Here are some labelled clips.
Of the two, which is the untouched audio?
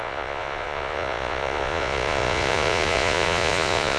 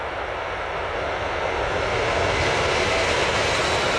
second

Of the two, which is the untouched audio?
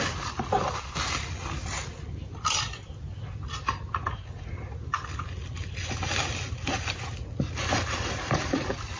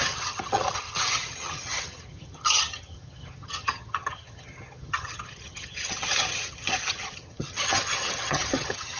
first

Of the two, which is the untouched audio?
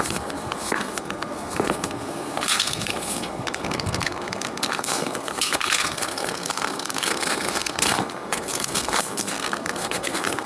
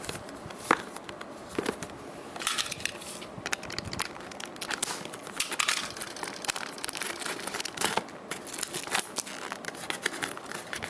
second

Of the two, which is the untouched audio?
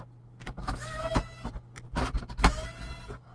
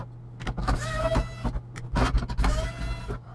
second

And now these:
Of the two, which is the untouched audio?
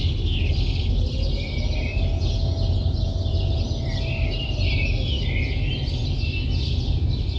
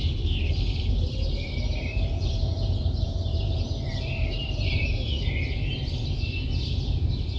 first